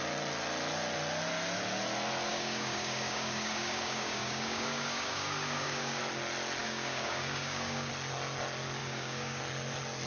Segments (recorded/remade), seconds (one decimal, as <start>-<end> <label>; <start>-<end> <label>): 0.0-2.3 recorded; 2.3-6.0 remade; 6.0-6.6 recorded; 6.6-7.9 remade; 7.9-8.8 recorded; 8.8-9.4 remade; 9.4-10.1 recorded

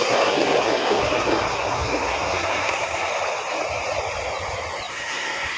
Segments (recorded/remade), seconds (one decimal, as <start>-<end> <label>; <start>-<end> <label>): 0.0-3.1 remade; 3.1-4.9 recorded; 4.9-5.6 remade

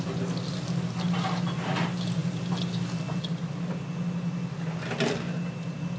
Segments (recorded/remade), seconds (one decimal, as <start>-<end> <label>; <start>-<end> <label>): 0.0-6.0 recorded

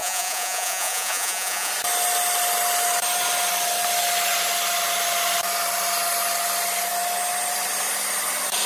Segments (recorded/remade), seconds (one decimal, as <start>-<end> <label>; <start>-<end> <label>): 0.0-1.7 remade; 1.7-8.7 recorded

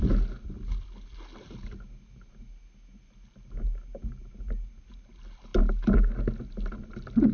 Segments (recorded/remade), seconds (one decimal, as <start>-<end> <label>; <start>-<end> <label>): 0.0-7.3 recorded

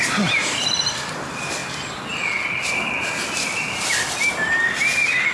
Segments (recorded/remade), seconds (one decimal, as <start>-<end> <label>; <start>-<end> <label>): 0.0-5.3 recorded

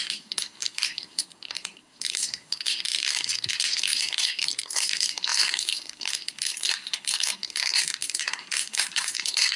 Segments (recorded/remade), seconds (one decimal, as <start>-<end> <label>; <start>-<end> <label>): 0.0-9.6 remade